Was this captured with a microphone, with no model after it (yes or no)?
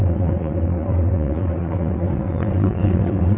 no